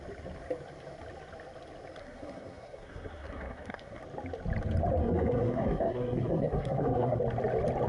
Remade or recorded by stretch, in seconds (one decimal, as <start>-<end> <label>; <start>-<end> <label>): 0.0-2.0 recorded; 2.0-4.0 remade; 4.0-5.0 recorded; 5.0-7.2 remade; 7.2-7.9 recorded